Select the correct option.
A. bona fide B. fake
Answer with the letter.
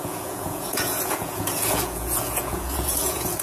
B